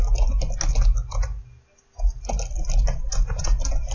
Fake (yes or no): no